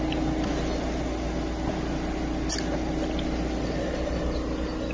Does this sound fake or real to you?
real